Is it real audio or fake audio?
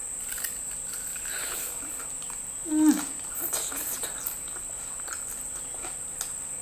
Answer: real